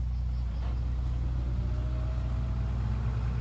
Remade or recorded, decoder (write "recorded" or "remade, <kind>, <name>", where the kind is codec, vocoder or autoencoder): recorded